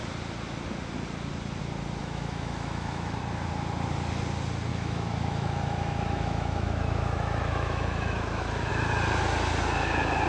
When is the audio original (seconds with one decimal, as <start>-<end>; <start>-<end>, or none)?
0.0-2.0; 3.2-4.7; 8.7-10.3